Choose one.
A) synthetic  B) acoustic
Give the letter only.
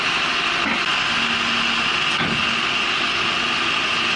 B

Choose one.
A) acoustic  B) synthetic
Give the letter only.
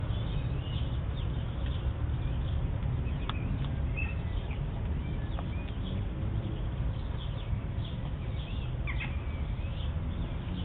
A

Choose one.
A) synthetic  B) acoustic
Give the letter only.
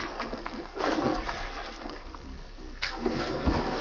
A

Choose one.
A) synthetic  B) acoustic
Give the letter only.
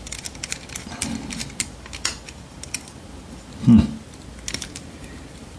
B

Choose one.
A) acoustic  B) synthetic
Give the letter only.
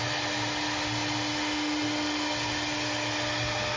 A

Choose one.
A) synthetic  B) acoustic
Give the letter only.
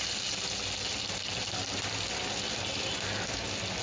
B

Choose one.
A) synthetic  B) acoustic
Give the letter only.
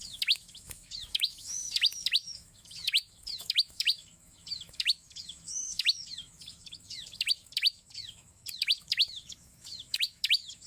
A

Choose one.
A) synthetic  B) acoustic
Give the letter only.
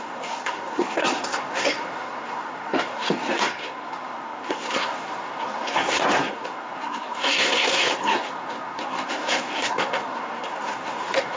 A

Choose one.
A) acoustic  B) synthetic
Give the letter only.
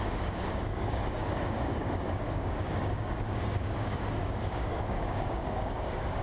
B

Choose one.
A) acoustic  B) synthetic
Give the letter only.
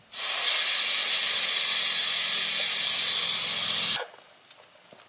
A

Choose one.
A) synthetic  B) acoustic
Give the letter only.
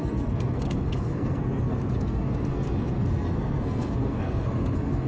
A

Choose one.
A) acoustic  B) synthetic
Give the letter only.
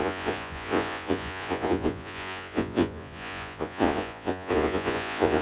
B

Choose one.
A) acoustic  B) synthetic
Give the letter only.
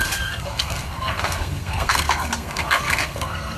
B